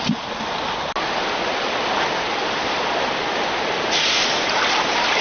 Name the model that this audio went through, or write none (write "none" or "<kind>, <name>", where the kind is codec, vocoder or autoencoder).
none